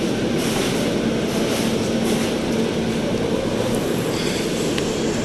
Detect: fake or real real